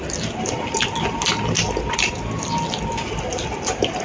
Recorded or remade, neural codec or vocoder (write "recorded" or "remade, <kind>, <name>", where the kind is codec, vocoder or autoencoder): recorded